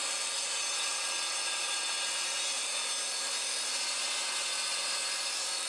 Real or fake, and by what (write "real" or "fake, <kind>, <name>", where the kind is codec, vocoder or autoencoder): real